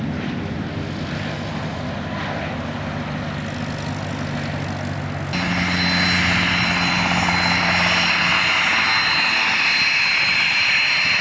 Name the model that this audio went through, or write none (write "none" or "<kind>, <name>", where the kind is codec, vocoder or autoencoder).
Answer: none